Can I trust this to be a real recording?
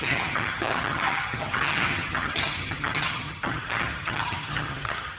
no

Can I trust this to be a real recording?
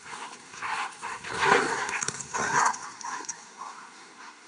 no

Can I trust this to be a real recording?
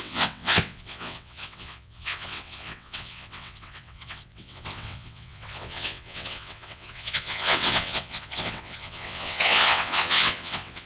no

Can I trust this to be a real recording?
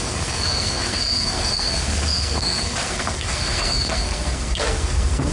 no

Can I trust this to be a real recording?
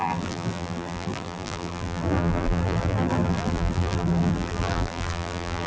no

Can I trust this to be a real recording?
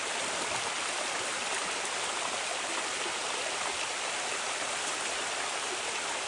yes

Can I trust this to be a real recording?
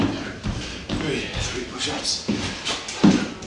yes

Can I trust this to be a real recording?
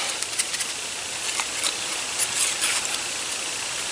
yes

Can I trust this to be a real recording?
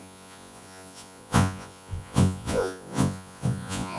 no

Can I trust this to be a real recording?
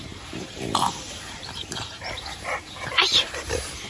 no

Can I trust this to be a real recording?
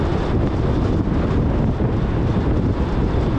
yes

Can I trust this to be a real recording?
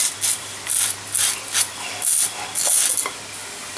yes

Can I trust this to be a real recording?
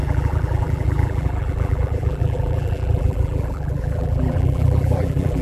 no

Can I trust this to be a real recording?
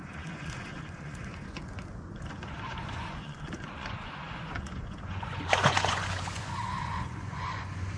no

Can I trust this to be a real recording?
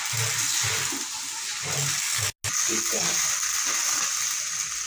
yes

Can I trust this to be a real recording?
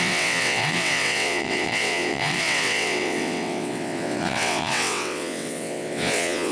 no